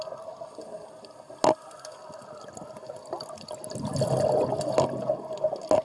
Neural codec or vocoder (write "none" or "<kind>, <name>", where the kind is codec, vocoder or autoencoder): none